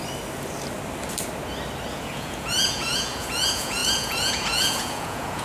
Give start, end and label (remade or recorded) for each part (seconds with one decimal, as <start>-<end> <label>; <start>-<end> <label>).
0.0-1.9 recorded; 1.9-5.4 remade